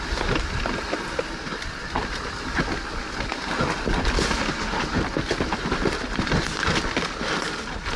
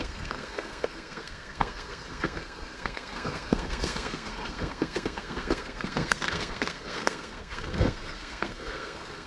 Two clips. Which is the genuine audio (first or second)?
first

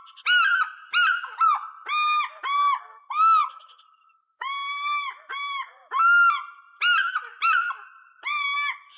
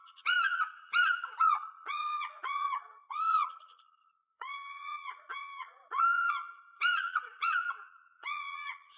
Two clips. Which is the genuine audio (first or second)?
first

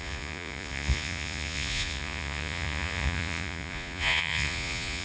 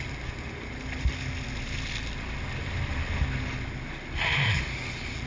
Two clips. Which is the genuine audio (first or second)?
second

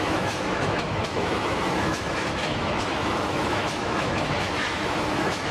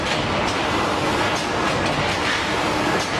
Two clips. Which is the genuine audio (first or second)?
second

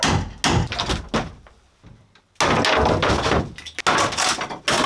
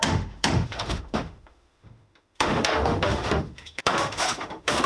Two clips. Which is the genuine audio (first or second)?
first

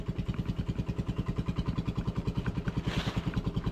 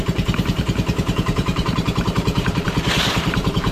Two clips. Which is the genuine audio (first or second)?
first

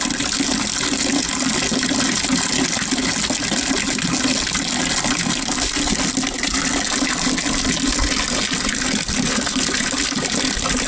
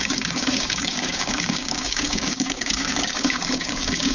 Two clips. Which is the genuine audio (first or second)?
first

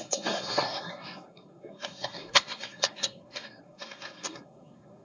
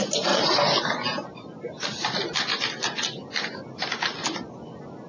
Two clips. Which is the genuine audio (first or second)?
second